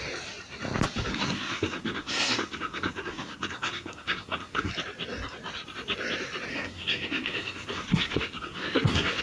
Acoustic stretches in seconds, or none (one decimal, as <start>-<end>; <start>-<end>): 0.0-1.1; 4.7-6.5